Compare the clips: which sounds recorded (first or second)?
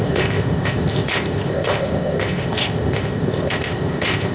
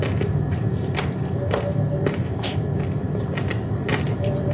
second